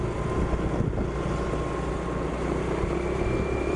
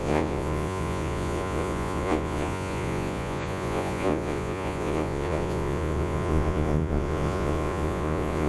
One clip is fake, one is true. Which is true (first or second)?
first